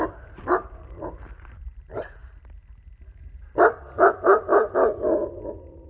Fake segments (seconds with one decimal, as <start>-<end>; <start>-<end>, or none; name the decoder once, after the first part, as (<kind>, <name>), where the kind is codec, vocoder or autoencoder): 0.0-2.2 (vocoder, BigVGAN v2)